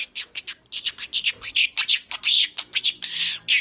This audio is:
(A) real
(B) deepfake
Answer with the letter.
A